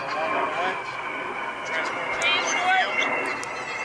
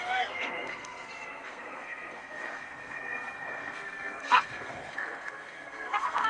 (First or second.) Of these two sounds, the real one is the first